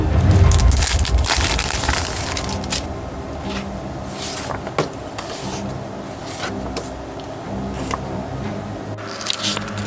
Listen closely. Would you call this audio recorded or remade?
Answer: recorded